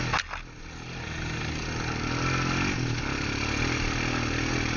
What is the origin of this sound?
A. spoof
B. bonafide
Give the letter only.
B